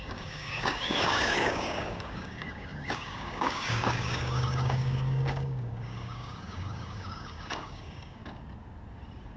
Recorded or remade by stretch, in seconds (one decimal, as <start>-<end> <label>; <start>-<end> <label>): 0.0-8.2 remade; 8.2-9.4 recorded